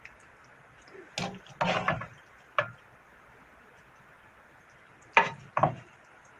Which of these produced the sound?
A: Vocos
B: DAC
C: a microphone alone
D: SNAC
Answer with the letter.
C